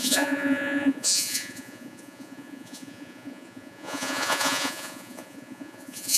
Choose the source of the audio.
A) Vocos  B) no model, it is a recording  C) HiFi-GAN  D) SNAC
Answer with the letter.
A